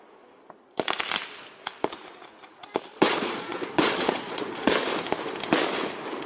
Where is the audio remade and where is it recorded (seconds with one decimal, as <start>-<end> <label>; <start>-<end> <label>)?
0.0-2.9 recorded; 2.9-4.7 remade; 4.7-6.3 recorded